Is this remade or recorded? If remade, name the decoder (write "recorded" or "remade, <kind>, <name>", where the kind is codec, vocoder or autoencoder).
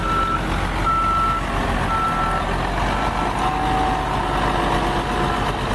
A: recorded